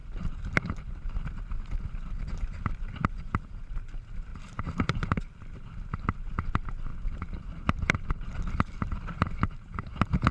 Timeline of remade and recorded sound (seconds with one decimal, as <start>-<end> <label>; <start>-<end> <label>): 0.0-4.3 recorded; 4.3-5.4 remade; 5.4-6.9 recorded; 6.9-8.0 remade; 8.0-10.3 recorded